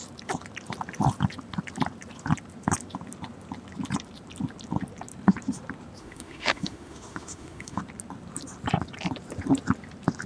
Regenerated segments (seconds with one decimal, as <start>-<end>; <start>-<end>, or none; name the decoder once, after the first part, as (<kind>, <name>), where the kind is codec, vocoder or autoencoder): 6.0-7.8 (autoencoder, DAC-VAE)

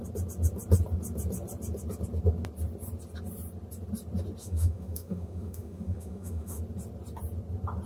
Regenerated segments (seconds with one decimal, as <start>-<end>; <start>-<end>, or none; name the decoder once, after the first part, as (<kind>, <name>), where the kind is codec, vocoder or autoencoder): 4.4-6.6 (autoencoder, DAC-VAE)